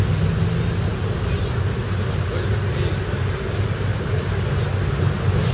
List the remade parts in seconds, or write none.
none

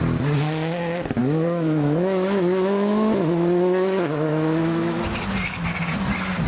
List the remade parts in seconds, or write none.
1.2-5.1 (autoencoder, DAC-VAE)

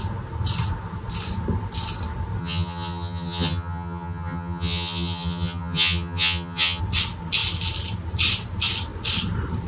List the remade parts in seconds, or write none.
2.4-6.8 (vocoder, HiFi-GAN)

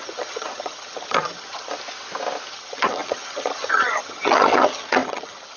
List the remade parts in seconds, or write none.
0.0-1.7 (vocoder, HiFi-GAN); 2.5-5.6